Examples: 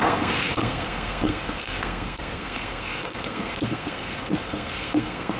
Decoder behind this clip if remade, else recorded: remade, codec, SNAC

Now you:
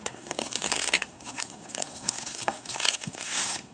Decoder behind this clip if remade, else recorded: remade, codec, SNAC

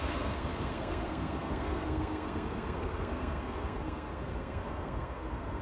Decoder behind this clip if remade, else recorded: remade, codec, SNAC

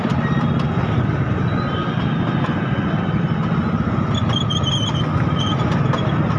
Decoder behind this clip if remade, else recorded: recorded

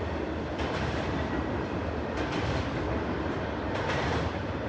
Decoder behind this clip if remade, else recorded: recorded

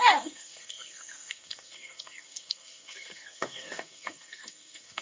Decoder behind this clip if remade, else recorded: remade, codec, SNAC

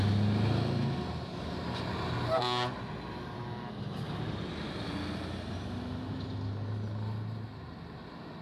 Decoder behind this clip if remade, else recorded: recorded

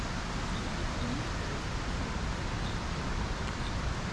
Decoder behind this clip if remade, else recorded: recorded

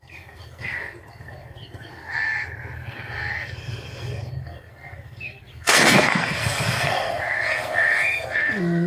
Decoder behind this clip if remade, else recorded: remade, codec, SNAC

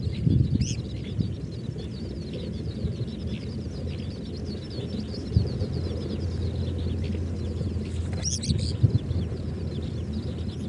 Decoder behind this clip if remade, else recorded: recorded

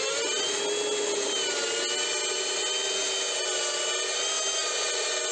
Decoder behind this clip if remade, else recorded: recorded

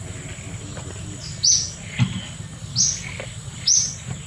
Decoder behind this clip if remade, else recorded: recorded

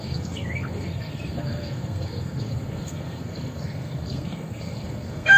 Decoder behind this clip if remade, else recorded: remade, codec, SNAC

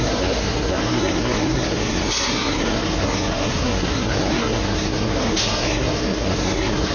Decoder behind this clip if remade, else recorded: remade, codec, SNAC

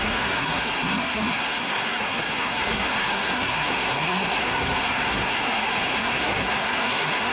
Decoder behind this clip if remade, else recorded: remade, codec, SNAC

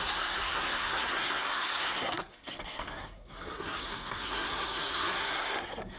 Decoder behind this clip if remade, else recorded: remade, codec, SNAC